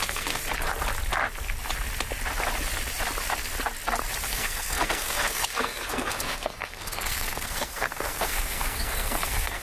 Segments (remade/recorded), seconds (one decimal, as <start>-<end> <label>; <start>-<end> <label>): 0.0-0.4 remade; 0.4-4.2 recorded; 4.2-9.6 remade